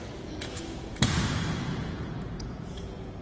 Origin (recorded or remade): remade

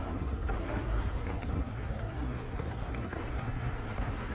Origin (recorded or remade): remade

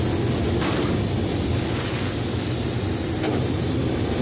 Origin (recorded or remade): recorded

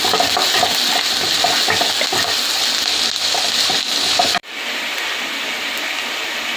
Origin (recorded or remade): recorded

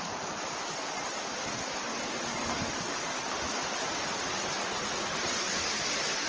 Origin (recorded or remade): recorded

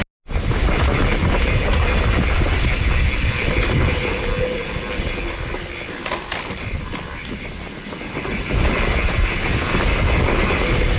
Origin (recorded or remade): recorded